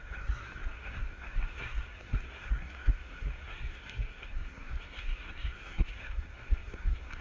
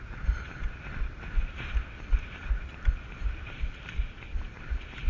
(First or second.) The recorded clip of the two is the second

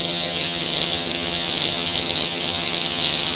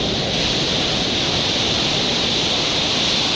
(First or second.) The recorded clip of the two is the second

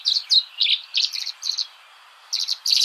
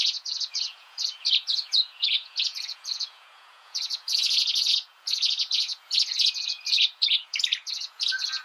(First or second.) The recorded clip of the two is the first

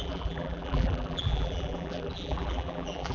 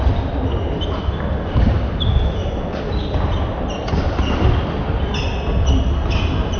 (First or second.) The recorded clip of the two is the second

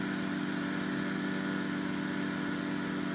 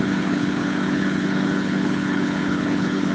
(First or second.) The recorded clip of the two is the first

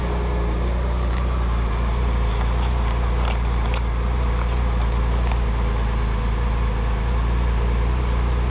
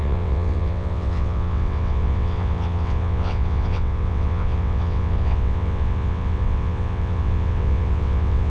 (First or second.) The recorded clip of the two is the first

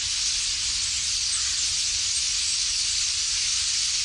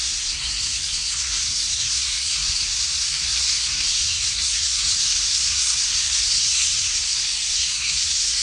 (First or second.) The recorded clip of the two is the first